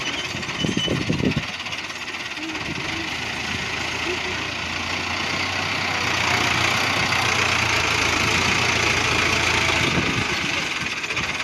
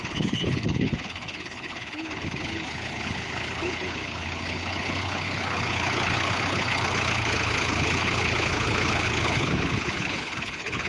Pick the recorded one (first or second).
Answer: first